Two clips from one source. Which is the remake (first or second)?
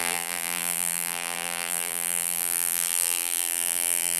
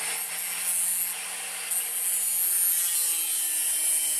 first